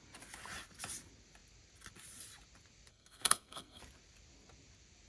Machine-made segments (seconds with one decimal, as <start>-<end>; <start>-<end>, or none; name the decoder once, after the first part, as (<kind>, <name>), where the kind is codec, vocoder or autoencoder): 2.9-3.8 (codec, SNAC)